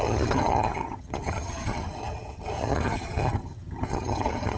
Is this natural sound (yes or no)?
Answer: no